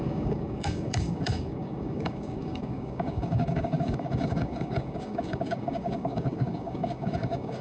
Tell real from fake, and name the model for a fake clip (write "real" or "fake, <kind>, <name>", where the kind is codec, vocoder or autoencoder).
fake, codec, DAC